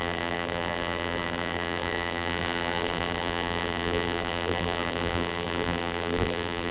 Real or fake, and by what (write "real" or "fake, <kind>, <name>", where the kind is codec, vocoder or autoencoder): fake, vocoder, BigVGAN v2